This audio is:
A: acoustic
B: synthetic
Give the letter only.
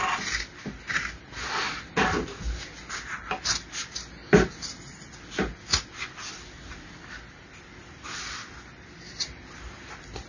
A